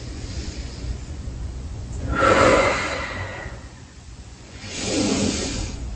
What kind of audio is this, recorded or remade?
remade